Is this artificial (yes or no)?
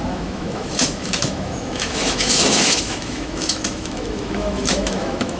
yes